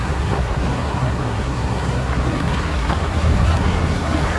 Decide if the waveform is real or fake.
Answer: fake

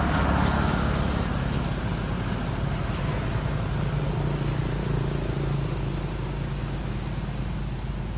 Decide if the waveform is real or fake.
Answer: real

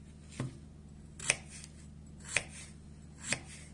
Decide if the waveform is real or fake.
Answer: real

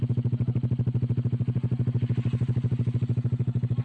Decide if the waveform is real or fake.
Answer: real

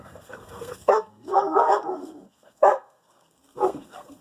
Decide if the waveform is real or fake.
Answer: fake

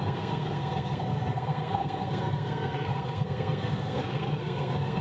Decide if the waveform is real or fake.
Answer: fake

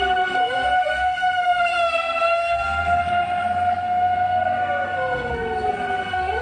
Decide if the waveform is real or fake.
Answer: fake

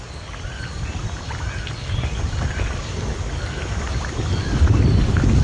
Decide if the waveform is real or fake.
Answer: real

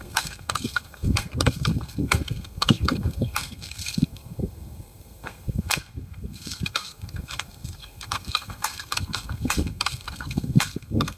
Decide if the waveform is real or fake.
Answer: fake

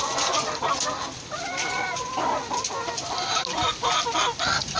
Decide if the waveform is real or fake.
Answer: real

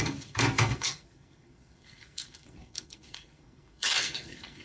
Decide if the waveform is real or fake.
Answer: fake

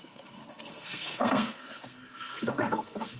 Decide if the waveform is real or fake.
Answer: fake